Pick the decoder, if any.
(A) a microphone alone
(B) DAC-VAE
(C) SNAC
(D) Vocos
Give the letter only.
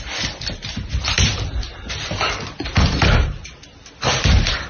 A